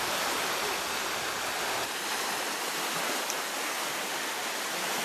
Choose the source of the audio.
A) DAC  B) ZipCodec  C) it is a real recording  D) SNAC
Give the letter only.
C